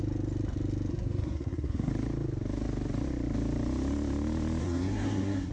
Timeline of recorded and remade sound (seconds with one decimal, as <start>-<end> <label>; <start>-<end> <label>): 0.0-0.9 recorded; 0.9-1.9 remade; 1.9-4.6 recorded; 4.6-5.5 remade